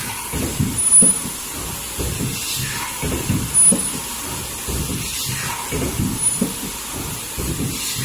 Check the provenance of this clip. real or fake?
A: real